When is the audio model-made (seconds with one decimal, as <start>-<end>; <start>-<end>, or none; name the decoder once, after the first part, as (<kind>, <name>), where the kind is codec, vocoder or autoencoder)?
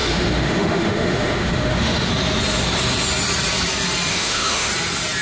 0.0-2.1 (autoencoder, DAC-VAE); 4.1-4.7